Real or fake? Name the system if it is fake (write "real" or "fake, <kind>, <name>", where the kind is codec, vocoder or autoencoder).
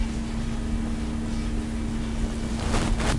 real